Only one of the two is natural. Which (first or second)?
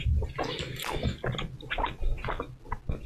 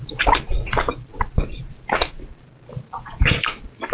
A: first